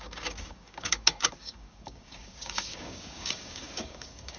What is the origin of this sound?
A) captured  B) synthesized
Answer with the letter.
B